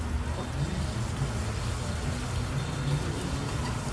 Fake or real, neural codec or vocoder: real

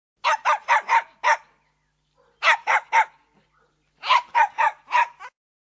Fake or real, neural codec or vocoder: real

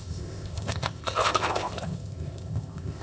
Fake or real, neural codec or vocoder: fake, codec, ZipCodec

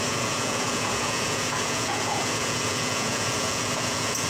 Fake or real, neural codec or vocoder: fake, vocoder, Vocos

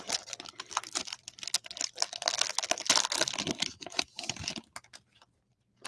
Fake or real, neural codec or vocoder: real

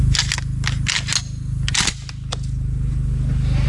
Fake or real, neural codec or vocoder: real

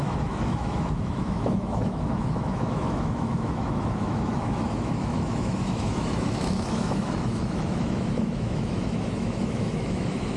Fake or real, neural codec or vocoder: fake, autoencoder, DAC-VAE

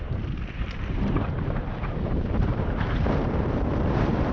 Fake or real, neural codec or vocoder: fake, vocoder, BigVGAN v2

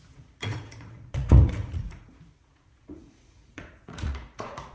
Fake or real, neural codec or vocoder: fake, vocoder, Vocos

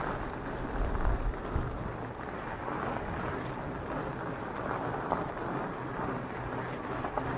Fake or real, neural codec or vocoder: real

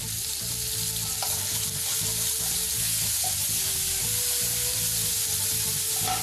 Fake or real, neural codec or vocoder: real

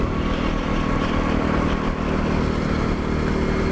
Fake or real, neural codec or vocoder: real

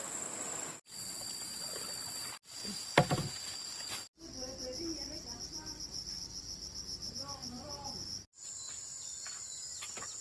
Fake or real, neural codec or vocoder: real